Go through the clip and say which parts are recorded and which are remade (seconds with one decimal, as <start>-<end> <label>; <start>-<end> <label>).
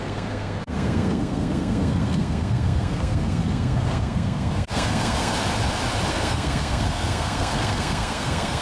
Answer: 0.0-5.3 remade; 5.3-6.1 recorded; 6.1-8.6 remade